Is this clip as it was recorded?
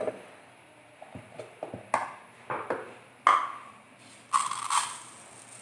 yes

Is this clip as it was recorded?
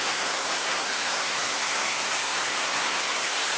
no